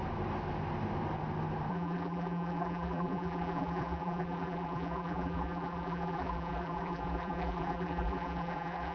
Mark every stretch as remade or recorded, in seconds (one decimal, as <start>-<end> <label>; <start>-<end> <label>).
0.0-1.7 recorded; 1.7-8.9 remade